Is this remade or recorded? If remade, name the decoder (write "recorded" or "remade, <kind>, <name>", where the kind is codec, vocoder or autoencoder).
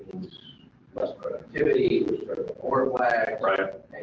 recorded